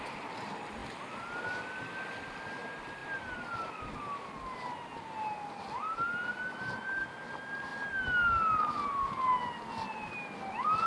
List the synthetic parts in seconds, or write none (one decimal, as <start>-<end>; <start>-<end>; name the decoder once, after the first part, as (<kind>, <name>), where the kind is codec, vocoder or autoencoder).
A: none